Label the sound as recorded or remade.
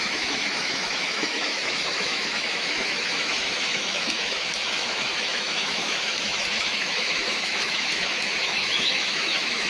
remade